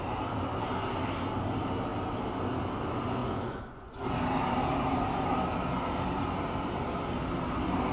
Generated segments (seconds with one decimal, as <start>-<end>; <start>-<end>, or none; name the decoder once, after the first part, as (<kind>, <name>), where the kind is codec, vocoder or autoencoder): 3.2-3.9 (vocoder, Vocos)